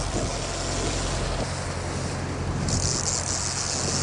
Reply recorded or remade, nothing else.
recorded